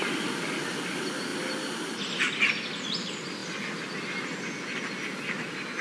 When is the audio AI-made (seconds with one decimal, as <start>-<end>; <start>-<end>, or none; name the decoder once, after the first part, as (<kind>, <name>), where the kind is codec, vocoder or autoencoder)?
none